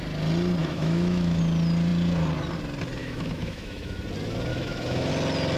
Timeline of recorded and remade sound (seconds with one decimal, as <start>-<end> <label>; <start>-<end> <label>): 0.0-0.6 recorded; 0.6-1.4 remade; 1.4-3.0 recorded; 3.0-4.0 remade; 4.0-4.5 recorded; 4.5-5.1 remade; 5.1-5.6 recorded